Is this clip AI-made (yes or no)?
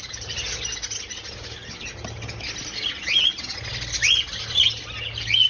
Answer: no